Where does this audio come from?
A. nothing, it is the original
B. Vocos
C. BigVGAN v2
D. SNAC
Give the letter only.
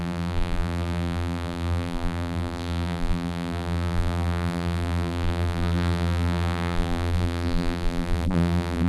C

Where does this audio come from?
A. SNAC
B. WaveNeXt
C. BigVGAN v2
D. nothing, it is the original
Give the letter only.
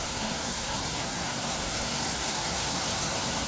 A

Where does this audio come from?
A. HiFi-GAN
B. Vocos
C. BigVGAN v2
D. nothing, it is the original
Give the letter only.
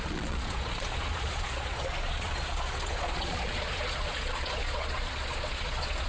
B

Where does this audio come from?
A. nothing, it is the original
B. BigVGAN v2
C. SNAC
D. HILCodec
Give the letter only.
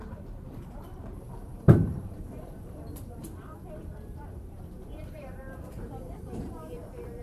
B